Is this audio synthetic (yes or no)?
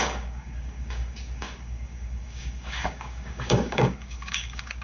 yes